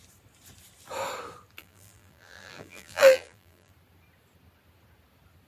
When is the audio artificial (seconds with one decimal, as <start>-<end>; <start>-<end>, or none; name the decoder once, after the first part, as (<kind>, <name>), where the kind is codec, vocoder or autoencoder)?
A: 1.6-3.7 (vocoder, BigVGAN v2)